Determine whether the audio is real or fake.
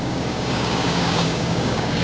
fake